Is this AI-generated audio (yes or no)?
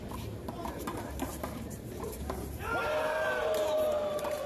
yes